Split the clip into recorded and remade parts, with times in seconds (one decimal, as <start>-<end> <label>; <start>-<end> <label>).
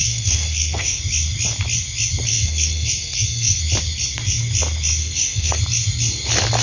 0.0-1.0 remade; 1.0-2.3 recorded; 2.3-3.6 remade; 3.6-5.0 recorded; 5.0-5.6 remade; 5.6-6.6 recorded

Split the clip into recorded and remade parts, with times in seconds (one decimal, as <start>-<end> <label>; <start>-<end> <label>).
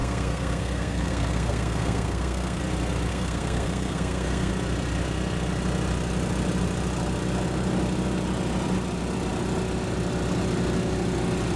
0.0-2.6 remade; 2.6-3.1 recorded; 3.1-4.5 remade; 4.5-11.6 recorded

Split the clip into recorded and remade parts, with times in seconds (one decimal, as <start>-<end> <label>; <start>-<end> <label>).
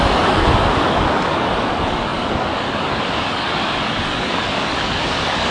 0.0-5.5 remade